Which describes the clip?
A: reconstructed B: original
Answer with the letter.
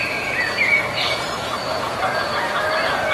A